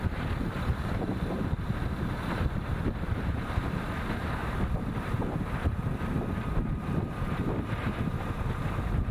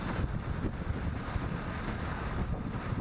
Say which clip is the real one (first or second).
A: second